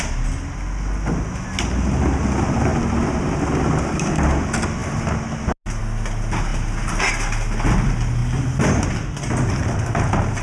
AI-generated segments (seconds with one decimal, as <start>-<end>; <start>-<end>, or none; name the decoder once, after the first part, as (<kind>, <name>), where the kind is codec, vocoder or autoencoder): none